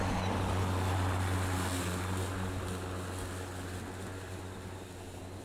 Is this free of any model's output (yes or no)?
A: yes